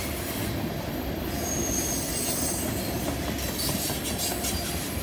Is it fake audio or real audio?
real